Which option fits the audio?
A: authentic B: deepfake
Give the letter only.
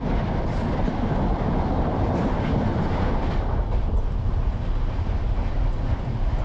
A